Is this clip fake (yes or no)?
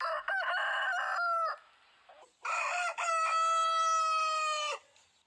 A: no